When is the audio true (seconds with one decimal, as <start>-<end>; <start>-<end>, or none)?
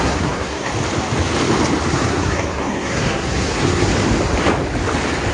0.7-1.9; 3.9-5.3